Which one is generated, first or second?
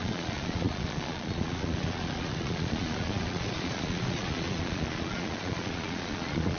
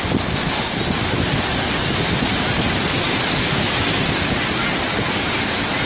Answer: first